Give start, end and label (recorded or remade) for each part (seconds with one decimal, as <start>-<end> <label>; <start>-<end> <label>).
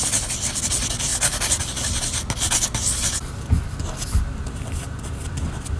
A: 0.0-5.8 recorded